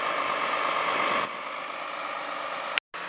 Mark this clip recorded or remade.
recorded